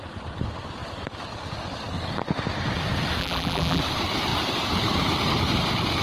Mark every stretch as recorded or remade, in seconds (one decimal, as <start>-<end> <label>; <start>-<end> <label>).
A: 0.0-3.2 recorded; 3.2-3.8 remade; 3.8-6.0 recorded